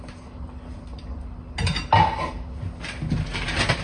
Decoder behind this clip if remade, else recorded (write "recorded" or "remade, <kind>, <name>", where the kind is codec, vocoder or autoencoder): recorded